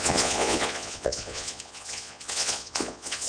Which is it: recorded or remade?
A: remade